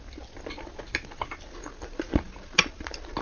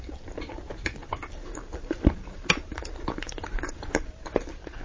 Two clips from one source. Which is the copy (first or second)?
second